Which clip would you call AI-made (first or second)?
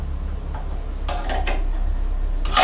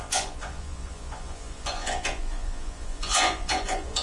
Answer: second